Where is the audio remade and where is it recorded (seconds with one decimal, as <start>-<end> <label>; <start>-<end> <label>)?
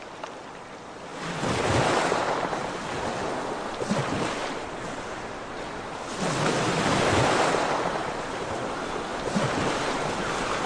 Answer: 0.0-8.0 recorded; 8.0-8.7 remade; 8.7-9.1 recorded; 9.1-9.7 remade; 9.7-10.7 recorded